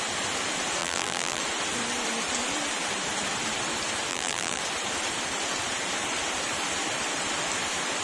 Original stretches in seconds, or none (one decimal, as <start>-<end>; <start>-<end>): 0.0-0.8; 1.4-4.1; 4.6-8.0

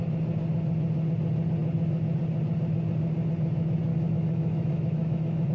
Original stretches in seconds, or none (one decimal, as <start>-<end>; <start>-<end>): 0.0-3.9

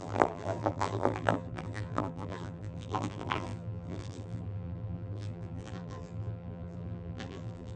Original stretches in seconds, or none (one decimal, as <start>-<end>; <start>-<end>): none

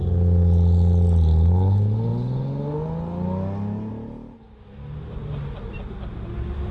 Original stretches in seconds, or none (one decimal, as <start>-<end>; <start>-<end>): 0.0-6.7

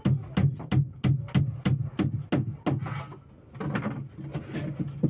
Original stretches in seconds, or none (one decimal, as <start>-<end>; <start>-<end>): 0.0-5.1